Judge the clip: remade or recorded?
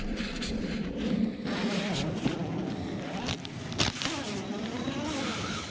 remade